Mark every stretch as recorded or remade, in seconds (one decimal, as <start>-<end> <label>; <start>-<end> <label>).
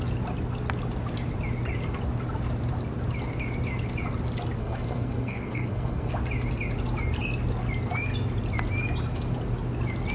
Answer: 0.0-4.6 recorded; 4.6-6.1 remade; 6.1-10.1 recorded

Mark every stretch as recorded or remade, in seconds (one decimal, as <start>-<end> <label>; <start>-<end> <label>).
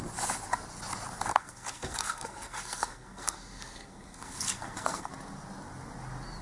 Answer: 0.0-1.3 recorded; 1.3-5.1 remade; 5.1-6.4 recorded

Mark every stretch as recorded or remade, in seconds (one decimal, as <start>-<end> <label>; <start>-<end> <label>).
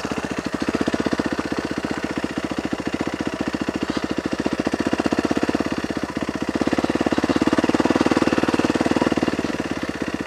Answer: 0.0-2.7 recorded; 2.7-6.2 remade; 6.2-7.3 recorded; 7.3-9.5 remade; 9.5-10.3 recorded